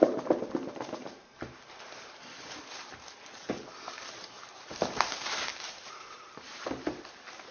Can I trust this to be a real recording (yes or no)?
no